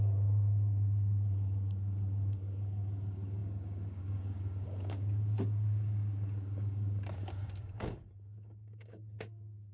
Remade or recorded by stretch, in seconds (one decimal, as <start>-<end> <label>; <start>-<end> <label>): 0.0-9.7 remade